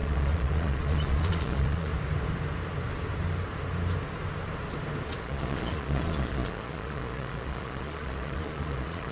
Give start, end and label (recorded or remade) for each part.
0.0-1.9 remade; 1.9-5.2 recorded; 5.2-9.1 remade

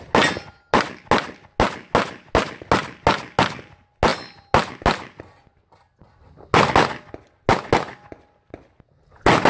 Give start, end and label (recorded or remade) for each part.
0.0-9.5 recorded